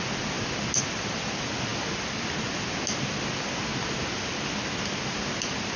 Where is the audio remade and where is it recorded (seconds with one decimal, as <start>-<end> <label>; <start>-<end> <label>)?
0.0-5.8 recorded